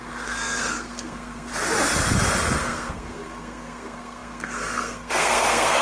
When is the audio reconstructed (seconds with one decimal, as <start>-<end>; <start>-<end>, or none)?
0.0-1.5; 2.6-5.8

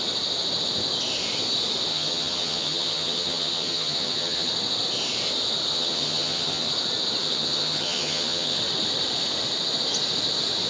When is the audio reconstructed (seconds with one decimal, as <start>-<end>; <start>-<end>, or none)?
1.9-4.5; 5.7-6.7; 7.2-8.6

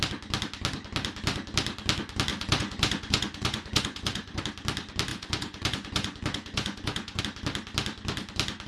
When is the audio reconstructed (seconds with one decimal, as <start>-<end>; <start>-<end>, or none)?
2.3-4.4; 5.1-7.2

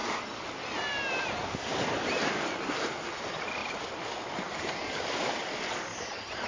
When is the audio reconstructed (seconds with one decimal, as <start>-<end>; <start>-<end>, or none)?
none

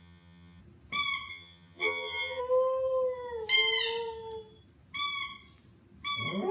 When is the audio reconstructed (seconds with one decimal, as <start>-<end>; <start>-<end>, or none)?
0.0-0.6; 1.3-2.4

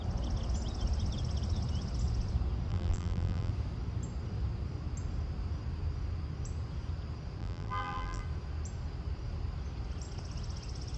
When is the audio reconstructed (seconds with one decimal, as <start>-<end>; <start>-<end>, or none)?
2.7-3.5; 7.4-8.2